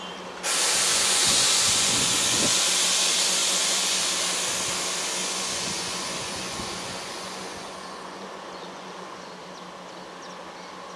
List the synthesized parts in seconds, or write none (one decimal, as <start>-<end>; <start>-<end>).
0.9-2.7; 3.4-4.1; 5.2-9.3